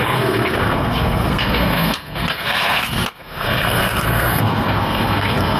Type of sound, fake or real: fake